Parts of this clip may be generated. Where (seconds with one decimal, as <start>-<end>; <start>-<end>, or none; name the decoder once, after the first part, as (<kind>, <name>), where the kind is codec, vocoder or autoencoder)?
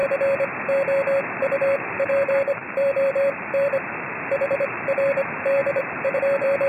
1.2-6.7 (vocoder, BigVGAN v2)